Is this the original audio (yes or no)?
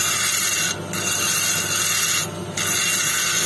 yes